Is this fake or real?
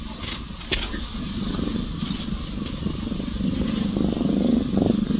real